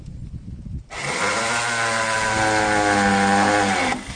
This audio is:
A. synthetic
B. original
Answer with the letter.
B